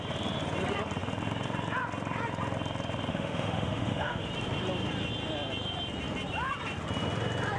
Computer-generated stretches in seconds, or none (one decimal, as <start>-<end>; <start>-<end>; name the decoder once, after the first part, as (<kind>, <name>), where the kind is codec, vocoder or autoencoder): 3.1-4.3 (autoencoder, DAC-VAE)